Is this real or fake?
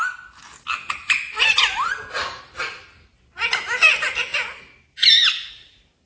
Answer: real